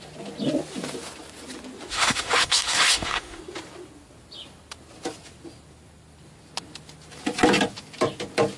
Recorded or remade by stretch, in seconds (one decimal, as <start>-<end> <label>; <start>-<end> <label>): 0.0-1.9 recorded; 1.9-3.4 remade; 3.4-8.6 recorded